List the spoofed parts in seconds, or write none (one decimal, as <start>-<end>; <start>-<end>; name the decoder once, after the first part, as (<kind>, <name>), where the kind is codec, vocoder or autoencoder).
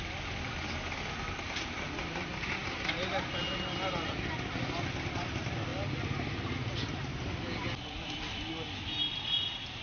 none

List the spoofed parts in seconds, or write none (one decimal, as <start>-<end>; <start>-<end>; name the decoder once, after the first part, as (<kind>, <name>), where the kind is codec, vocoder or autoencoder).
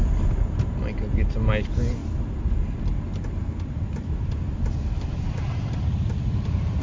none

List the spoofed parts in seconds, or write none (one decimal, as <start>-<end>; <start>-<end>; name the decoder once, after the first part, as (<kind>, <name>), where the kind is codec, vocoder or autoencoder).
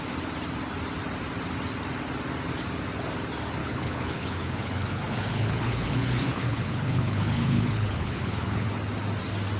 3.6-8.7 (codec, HILCodec)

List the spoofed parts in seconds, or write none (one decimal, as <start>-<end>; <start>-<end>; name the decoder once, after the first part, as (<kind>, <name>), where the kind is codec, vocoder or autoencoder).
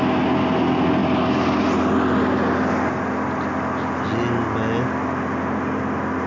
none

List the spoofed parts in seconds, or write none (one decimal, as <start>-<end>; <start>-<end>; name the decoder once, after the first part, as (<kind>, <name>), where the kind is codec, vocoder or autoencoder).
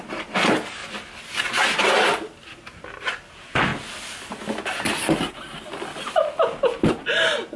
none